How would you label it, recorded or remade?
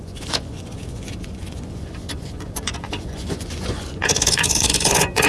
remade